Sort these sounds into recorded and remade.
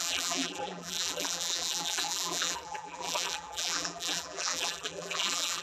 remade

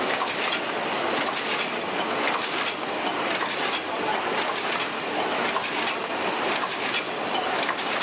recorded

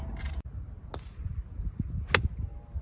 recorded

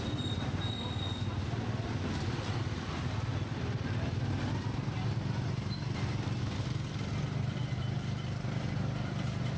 recorded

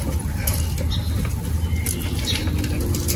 recorded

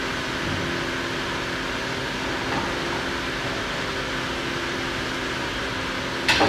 recorded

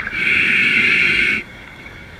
remade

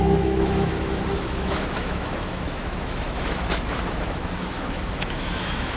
remade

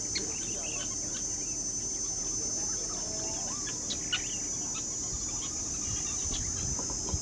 recorded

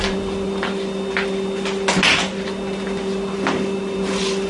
recorded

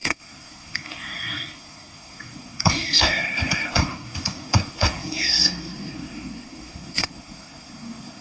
remade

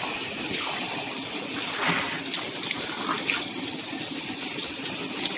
recorded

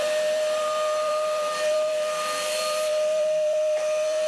remade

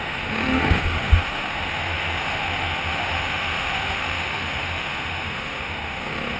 remade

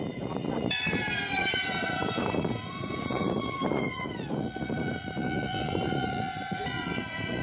remade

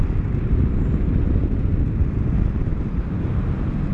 recorded